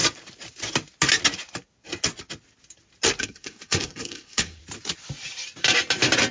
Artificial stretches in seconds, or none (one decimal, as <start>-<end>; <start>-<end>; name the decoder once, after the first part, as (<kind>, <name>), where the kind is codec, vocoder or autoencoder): 3.2-4.6 (codec, SNAC)